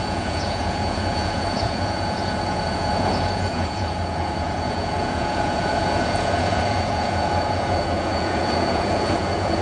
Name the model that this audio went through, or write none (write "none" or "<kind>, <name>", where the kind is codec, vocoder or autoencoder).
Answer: vocoder, Vocos